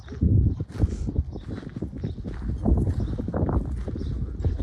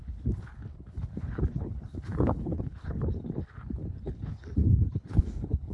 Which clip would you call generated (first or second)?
second